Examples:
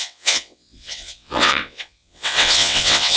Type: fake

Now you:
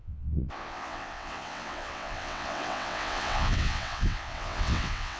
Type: fake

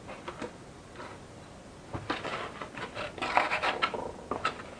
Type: real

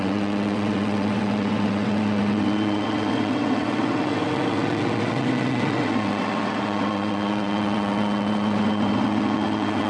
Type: fake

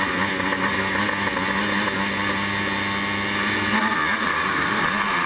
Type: real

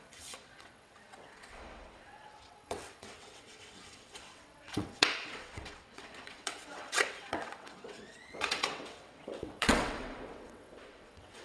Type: fake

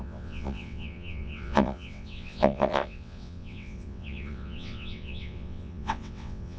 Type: fake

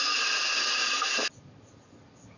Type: real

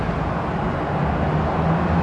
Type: real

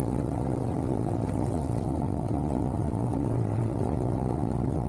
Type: fake